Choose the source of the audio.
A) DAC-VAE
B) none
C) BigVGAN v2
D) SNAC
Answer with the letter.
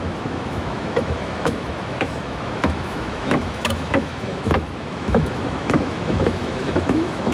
A